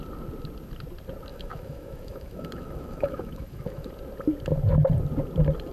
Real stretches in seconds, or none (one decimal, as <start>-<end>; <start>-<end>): 0.0-1.3; 3.9-5.7